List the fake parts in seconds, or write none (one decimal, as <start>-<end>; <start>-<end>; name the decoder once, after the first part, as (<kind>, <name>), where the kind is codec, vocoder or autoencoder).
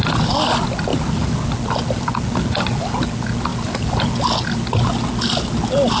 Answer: 3.5-4.0 (vocoder, BigVGAN v2)